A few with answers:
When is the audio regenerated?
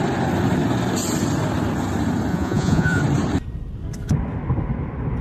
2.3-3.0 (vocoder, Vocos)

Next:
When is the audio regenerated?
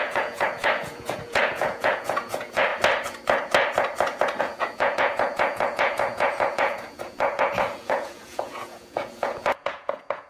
0.0-2.7 (vocoder, Vocos); 4.4-10.3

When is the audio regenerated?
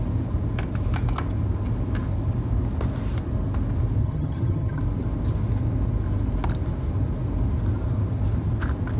4.0-4.8 (vocoder, HiFi-GAN)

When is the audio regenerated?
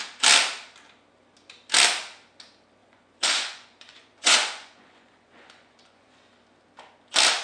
2.8-6.2 (vocoder, Vocos)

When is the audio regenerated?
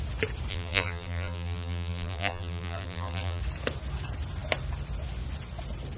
0.5-3.4 (vocoder, BigVGAN v2)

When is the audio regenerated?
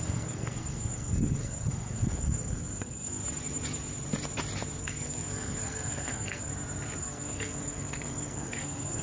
0.0-3.2 (codec, SNAC); 4.8-6.5; 7.0-9.0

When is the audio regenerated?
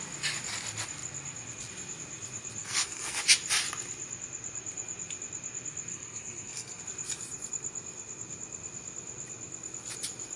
2.6-3.2 (codec, SNAC); 5.9-6.8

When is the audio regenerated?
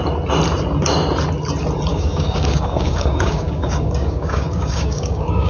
1.9-5.5 (codec, DAC)